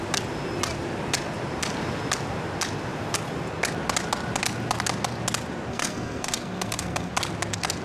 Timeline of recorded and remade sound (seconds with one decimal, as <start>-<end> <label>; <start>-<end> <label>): 0.0-5.7 recorded; 5.7-7.1 remade; 7.1-7.8 recorded